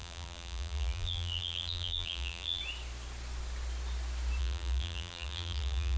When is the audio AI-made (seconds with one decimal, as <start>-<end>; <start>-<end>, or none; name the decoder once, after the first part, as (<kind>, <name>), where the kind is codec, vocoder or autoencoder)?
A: 0.0-2.6 (vocoder, BigVGAN v2); 4.4-6.0